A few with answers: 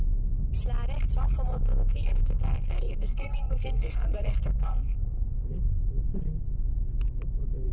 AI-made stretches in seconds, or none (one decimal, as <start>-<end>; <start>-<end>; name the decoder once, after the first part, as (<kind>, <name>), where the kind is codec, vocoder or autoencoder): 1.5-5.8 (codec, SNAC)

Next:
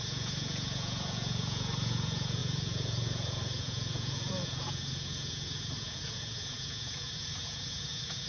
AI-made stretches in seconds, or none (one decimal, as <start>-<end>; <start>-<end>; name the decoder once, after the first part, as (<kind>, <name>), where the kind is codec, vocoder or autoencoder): 0.0-8.3 (vocoder, Vocos)

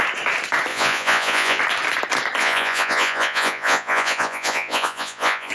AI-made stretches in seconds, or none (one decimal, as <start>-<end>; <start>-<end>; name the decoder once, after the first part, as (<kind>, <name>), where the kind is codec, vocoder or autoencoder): 0.7-1.6 (vocoder, Vocos); 2.4-5.5

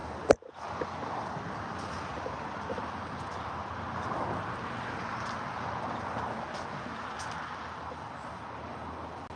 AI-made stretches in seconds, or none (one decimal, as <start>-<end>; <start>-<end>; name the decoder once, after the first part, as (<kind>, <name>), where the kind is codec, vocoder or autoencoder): none

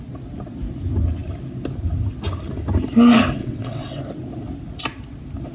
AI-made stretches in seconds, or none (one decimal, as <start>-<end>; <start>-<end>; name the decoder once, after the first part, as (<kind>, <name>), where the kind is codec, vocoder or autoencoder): 3.4-4.0 (vocoder, WaveNeXt)

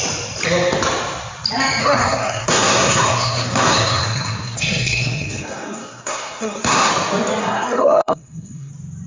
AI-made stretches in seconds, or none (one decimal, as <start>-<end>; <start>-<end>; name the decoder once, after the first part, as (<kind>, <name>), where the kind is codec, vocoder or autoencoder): 1.8-6.9 (codec, SNAC); 7.4-8.7

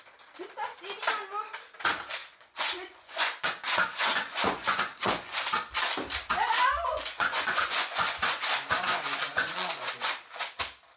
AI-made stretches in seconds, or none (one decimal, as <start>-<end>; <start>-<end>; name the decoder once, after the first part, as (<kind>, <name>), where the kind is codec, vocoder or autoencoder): 2.2-5.4 (vocoder, Vocos); 6.9-10.1